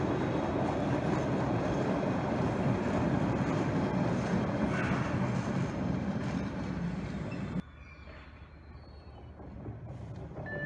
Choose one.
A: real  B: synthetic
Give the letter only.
A